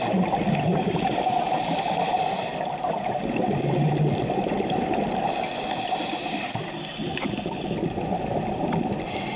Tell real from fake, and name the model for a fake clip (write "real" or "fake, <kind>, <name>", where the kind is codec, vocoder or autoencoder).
real